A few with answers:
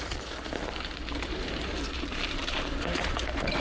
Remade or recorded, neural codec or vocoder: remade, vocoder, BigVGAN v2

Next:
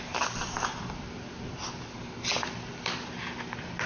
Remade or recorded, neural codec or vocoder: recorded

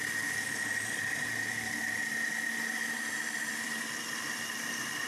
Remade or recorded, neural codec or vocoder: remade, vocoder, BigVGAN v2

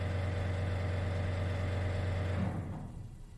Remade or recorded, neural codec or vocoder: recorded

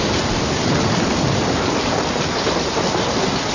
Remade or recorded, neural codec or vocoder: recorded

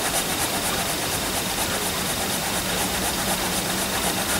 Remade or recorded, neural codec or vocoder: remade, vocoder, BigVGAN v2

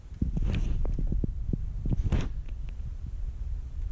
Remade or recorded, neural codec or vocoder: recorded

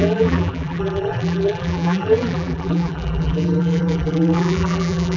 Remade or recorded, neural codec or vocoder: remade, vocoder, BigVGAN v2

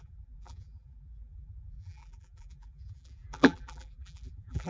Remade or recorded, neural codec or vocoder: remade, vocoder, BigVGAN v2